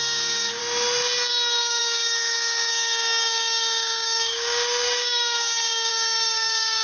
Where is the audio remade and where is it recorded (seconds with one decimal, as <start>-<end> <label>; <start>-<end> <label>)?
0.0-0.6 remade; 0.6-1.3 recorded; 1.3-6.8 remade